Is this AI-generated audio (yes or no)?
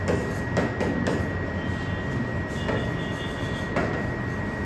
no